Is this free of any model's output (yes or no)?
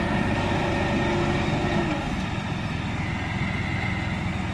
yes